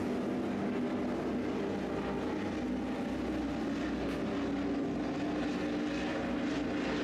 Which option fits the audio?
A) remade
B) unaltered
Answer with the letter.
B